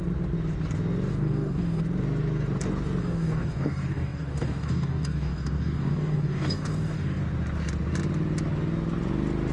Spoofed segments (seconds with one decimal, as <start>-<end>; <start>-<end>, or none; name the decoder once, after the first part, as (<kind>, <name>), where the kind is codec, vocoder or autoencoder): 1.1-1.8 (codec, DAC); 3.0-7.2